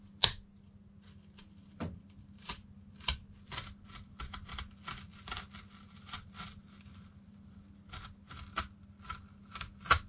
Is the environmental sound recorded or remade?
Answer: recorded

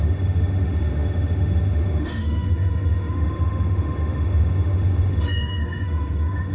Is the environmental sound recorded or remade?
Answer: remade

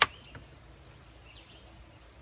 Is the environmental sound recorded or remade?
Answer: recorded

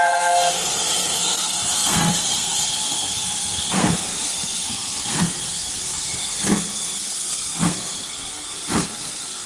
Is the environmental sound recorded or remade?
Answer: remade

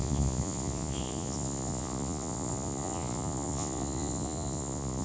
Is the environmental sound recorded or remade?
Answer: remade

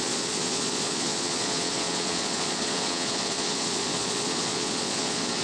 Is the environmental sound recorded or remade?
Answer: remade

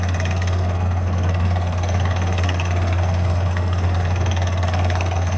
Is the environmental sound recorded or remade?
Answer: remade